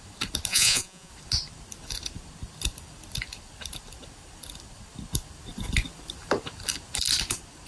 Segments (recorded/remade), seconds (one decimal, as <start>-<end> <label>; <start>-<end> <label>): 0.0-0.5 recorded; 0.5-1.1 remade; 1.1-7.7 recorded